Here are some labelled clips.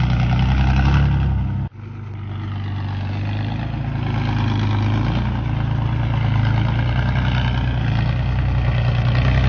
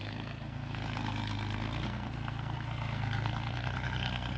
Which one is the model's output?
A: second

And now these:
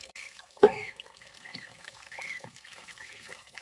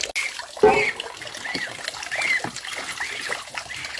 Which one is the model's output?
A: first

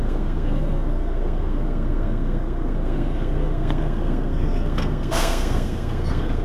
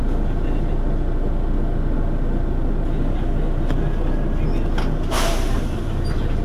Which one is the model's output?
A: first